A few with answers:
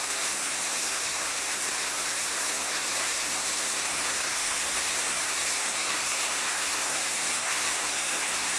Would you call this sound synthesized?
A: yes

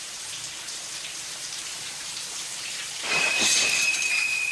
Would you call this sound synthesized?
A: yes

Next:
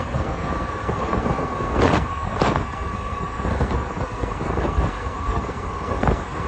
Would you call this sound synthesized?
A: yes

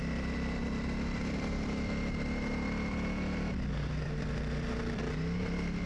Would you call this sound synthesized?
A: yes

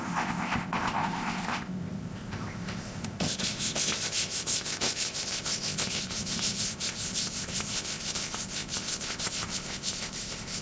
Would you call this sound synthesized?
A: yes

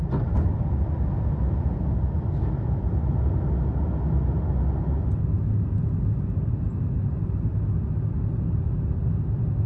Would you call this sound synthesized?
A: no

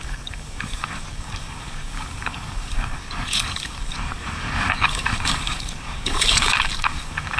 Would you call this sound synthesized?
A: yes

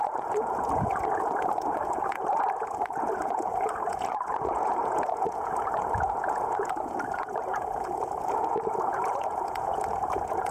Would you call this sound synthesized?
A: yes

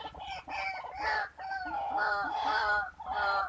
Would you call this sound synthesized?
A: no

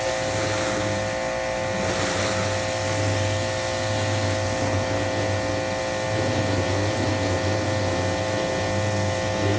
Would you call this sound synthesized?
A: no